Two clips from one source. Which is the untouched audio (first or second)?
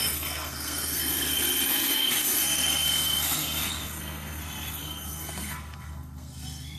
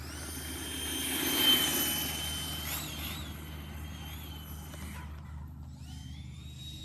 second